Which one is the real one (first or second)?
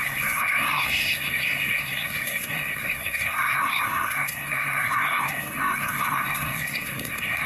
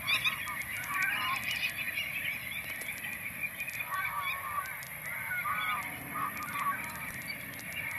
second